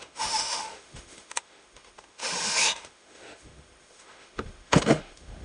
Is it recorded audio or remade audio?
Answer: remade